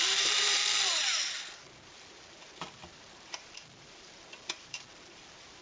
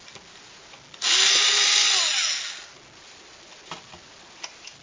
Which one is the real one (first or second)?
second